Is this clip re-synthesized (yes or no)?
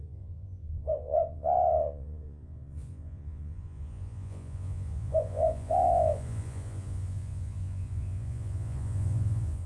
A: yes